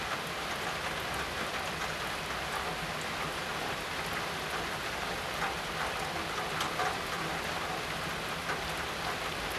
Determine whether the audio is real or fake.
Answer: real